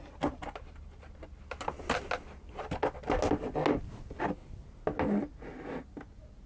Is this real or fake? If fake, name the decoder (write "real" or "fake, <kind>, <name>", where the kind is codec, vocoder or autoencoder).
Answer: real